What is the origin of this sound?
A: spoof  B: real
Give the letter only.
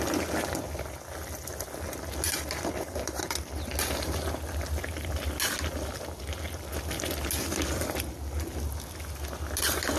B